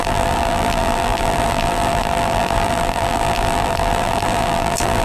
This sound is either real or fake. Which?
fake